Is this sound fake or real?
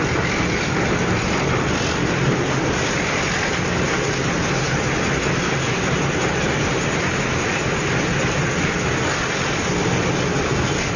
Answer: real